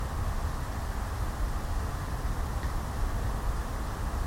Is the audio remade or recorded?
recorded